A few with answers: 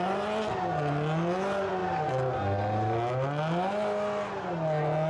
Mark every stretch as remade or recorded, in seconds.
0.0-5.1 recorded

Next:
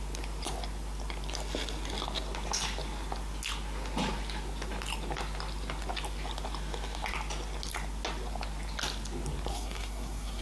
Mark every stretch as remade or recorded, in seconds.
0.0-9.5 recorded; 9.5-10.4 remade

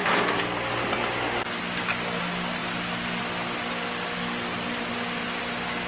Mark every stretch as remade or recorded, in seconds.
0.0-5.9 recorded

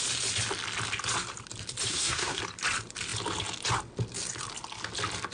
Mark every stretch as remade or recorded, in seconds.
0.0-1.9 recorded; 1.9-2.4 remade; 2.4-5.3 recorded

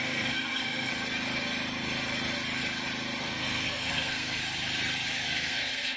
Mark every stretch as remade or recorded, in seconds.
0.0-0.9 remade; 0.9-3.2 recorded; 3.2-4.4 remade; 4.4-5.1 recorded; 5.1-6.0 remade

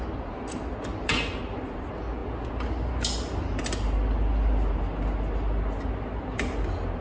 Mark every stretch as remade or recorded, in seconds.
0.0-7.0 recorded

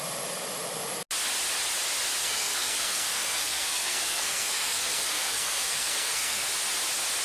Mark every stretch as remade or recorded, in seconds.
0.0-2.2 recorded; 2.2-6.5 remade; 6.5-7.2 recorded

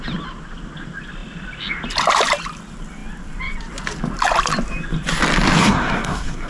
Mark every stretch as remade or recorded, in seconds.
0.0-5.6 recorded; 5.6-6.5 remade